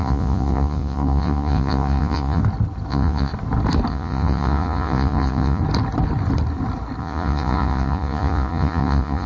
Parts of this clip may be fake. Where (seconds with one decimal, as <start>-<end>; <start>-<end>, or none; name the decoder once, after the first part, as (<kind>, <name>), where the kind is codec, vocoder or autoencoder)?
0.0-2.4 (vocoder, Vocos); 2.9-3.3; 3.9-5.6; 7.0-9.3